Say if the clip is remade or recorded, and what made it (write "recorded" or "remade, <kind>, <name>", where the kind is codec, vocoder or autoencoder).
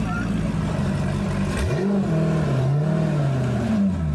recorded